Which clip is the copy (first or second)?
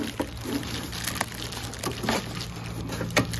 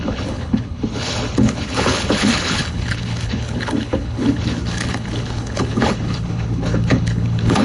second